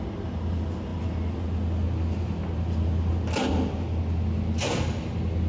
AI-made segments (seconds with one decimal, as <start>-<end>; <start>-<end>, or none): none